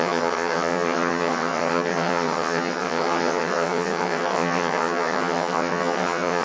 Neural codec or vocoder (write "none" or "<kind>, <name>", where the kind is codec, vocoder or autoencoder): vocoder, HiFi-GAN